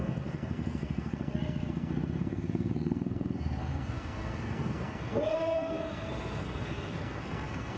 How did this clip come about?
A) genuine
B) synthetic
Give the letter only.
B